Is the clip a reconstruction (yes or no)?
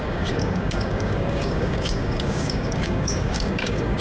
yes